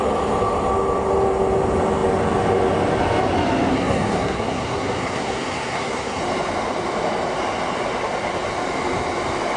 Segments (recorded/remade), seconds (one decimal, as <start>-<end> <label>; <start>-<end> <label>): 0.0-3.7 recorded; 3.7-6.2 remade; 6.2-9.6 recorded